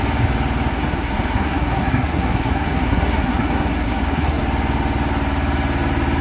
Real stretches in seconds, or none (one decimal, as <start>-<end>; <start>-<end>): 0.0-0.7; 4.4-6.2